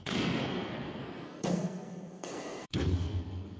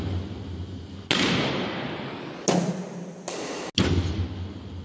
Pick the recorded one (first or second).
second